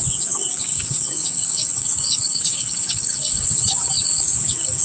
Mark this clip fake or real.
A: fake